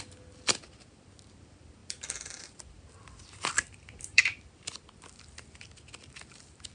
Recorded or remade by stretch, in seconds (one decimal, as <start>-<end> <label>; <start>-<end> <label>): 0.0-1.8 recorded; 1.8-4.2 remade; 4.2-6.7 recorded

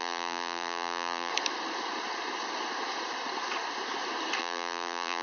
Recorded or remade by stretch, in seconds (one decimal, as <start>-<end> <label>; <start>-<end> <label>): 0.0-1.3 remade; 1.3-4.4 recorded; 4.4-5.2 remade

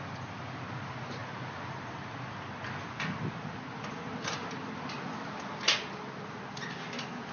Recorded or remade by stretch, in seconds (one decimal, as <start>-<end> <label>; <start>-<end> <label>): 0.0-7.3 recorded

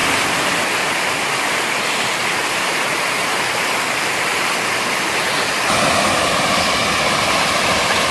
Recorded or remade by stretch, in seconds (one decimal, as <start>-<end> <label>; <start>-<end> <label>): 0.0-3.4 recorded; 3.4-4.3 remade; 4.3-5.9 recorded; 5.9-8.1 remade

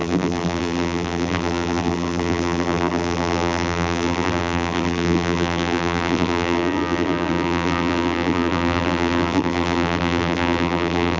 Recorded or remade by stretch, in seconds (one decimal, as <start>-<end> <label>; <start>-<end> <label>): 0.0-11.2 remade

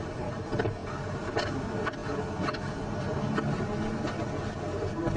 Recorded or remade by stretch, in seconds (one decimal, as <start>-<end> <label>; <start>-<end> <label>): 0.0-0.8 recorded; 0.8-1.5 remade; 1.5-5.2 recorded

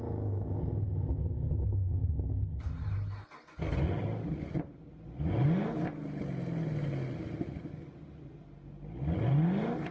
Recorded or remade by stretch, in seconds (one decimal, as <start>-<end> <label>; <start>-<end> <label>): 0.0-9.9 recorded

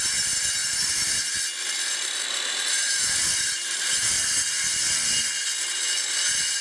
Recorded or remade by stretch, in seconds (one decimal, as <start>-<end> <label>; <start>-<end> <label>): 0.0-0.6 recorded; 0.6-1.2 remade; 1.2-2.8 recorded; 2.8-4.2 remade; 4.2-6.6 recorded